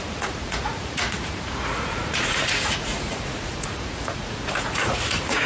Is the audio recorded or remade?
remade